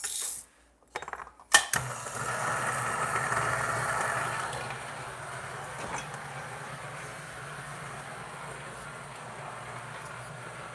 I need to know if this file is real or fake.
real